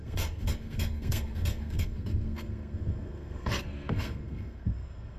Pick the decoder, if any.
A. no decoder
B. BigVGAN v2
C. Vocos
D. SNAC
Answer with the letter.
D